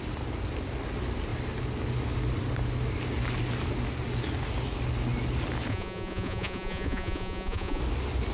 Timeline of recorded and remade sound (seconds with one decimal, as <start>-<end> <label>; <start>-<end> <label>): 0.0-5.7 recorded; 5.7-7.8 remade; 7.8-8.3 recorded